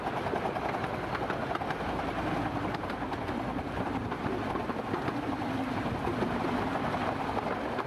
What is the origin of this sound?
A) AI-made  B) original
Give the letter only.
B